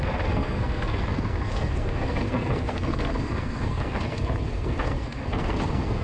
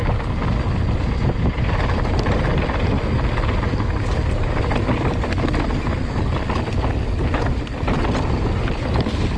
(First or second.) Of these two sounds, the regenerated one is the first